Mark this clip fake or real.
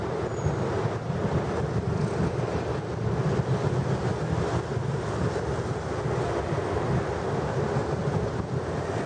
real